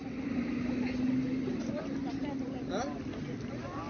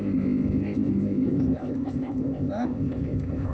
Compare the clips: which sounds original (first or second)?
first